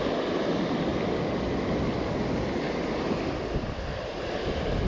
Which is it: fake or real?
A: real